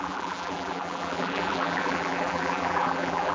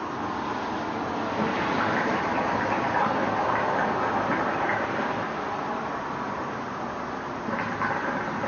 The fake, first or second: first